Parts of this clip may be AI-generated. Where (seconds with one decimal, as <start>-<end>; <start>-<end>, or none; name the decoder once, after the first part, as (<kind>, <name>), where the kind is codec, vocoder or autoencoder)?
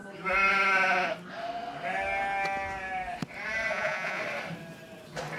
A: 3.7-4.2 (vocoder, Vocos)